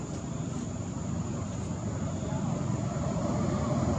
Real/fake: fake